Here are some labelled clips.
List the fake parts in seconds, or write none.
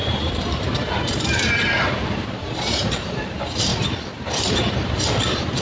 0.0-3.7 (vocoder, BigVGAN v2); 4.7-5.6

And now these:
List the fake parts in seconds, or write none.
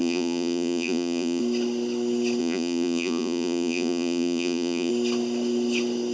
0.0-1.4 (vocoder, Vocos); 2.4-4.9